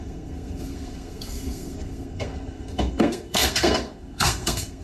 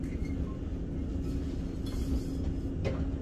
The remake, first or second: first